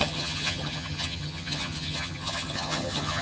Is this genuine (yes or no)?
no